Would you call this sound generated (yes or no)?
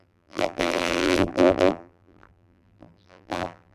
yes